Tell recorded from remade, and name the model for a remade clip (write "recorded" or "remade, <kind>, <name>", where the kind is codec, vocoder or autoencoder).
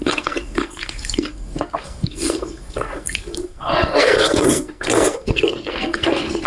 remade, codec, SNAC